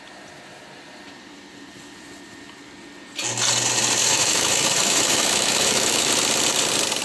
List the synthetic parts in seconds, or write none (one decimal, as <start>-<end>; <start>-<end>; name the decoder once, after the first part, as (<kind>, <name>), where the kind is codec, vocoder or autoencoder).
4.0-6.1 (autoencoder, DAC-VAE)